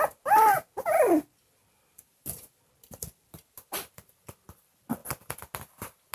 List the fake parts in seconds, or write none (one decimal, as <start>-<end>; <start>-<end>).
none

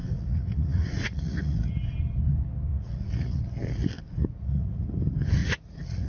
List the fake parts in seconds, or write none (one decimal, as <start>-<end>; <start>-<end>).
0.0-1.7; 2.7-3.4; 4.1-4.9; 5.4-6.1

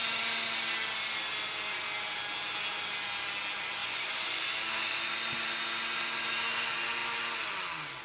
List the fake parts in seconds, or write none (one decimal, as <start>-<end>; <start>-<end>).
3.8-4.4

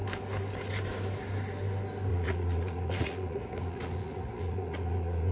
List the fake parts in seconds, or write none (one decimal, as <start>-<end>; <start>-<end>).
2.1-5.3

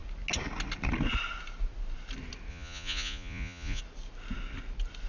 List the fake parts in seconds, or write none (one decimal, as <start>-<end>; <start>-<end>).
2.5-3.8

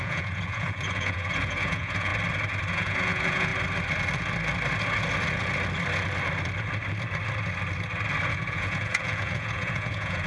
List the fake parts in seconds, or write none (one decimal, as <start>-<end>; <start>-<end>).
0.0-2.1; 2.7-3.5; 8.3-10.3